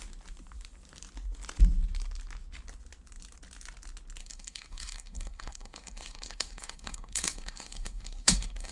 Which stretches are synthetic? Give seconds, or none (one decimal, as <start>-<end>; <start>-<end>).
4.2-8.7